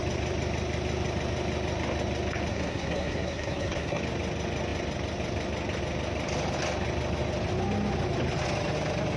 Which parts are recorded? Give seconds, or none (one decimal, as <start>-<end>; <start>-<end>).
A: 0.0-2.5; 4.0-9.2